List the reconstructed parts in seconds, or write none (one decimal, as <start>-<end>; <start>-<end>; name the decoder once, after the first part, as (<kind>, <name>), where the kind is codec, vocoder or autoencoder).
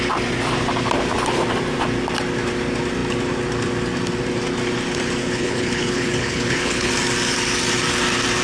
5.2-6.9 (codec, HILCodec)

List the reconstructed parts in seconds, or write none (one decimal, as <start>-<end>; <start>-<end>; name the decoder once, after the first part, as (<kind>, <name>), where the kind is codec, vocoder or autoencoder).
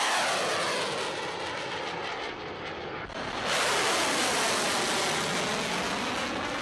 none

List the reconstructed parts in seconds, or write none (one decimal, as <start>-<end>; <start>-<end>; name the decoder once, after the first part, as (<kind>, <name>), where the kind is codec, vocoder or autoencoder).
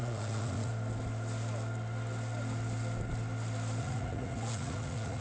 0.0-0.7 (vocoder, Vocos); 3.8-5.2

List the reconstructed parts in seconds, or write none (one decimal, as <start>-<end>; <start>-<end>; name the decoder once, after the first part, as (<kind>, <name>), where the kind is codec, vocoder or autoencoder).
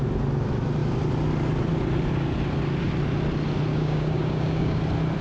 3.7-4.8 (codec, DAC)